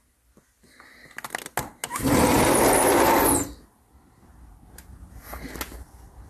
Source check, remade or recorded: recorded